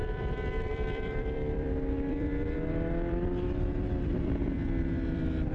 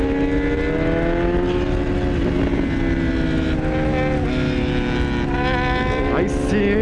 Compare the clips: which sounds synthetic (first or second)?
first